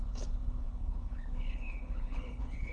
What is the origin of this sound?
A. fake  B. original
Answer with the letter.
A